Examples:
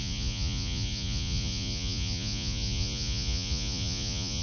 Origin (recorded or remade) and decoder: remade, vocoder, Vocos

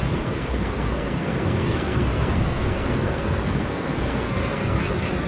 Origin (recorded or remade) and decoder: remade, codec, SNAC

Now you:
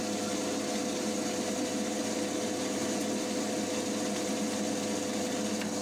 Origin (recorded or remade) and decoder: recorded